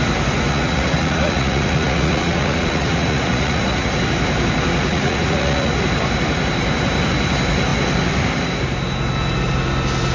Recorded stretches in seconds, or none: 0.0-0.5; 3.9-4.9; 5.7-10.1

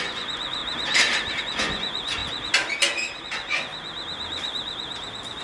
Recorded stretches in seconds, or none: 0.6-1.4; 2.2-3.2; 3.7-5.4

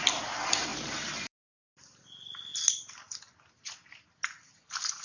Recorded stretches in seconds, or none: 0.0-0.7; 2.0-5.0

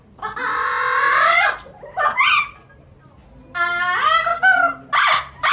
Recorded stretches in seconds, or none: 0.0-5.5